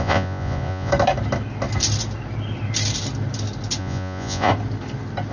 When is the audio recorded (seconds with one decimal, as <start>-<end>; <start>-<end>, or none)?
0.9-3.8; 4.5-5.3